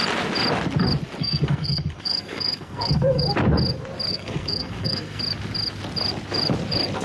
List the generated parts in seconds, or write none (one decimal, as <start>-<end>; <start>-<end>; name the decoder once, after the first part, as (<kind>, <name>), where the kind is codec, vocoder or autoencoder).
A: 1.2-3.2 (codec, SNAC); 4.1-5.2